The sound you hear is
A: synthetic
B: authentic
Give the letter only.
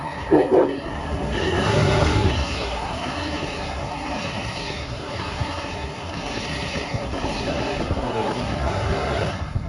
A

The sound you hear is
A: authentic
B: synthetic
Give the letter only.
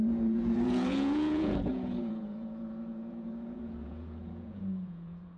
B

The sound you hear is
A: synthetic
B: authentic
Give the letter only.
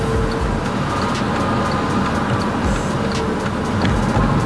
B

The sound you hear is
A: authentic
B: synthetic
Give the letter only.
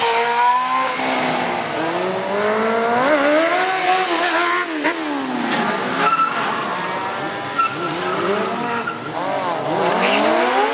A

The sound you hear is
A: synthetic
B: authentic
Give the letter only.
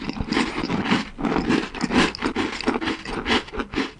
B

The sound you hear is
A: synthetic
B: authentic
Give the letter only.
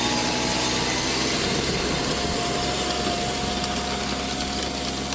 B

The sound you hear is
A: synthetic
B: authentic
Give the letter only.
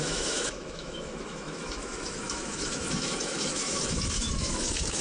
A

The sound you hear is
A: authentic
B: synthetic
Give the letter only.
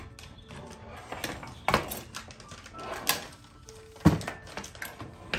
A